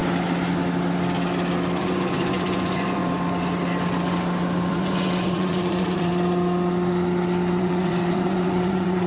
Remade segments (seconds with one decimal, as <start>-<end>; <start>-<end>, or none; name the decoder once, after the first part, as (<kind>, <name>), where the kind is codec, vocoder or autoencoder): 1.8-3.0 (vocoder, Vocos); 4.7-6.1; 7.6-9.1